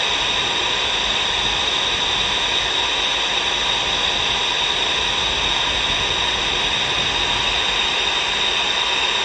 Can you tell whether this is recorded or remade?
recorded